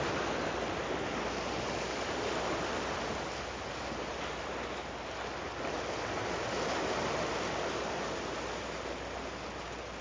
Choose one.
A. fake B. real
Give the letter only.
B